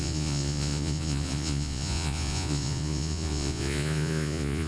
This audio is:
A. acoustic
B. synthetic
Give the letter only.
B